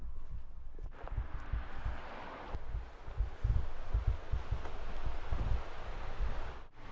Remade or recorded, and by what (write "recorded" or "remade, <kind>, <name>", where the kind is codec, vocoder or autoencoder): recorded